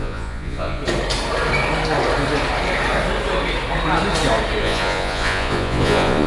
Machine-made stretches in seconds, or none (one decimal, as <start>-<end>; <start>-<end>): 0.0-0.8; 4.6-6.3